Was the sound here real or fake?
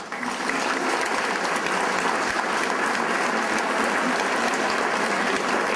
real